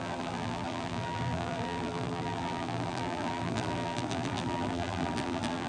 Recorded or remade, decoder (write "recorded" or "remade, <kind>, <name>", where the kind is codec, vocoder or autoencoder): remade, vocoder, BigVGAN v2